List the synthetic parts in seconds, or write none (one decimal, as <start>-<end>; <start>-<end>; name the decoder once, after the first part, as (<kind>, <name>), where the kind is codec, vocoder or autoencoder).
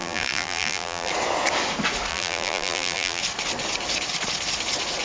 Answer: 0.0-1.1 (vocoder, BigVGAN v2); 2.1-3.2